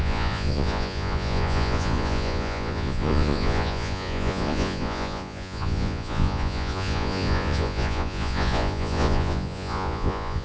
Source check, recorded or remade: remade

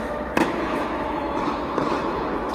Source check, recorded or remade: remade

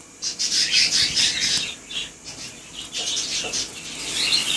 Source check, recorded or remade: recorded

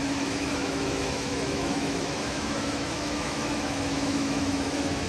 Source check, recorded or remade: remade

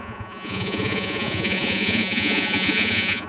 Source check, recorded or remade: remade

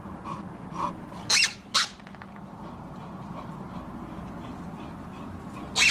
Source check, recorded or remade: recorded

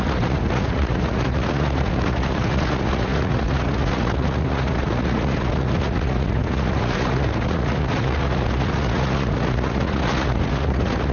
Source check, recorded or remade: remade